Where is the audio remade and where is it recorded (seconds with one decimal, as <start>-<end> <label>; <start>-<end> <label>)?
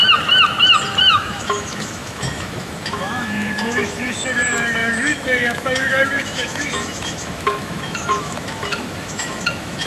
0.0-1.1 recorded; 1.1-9.9 remade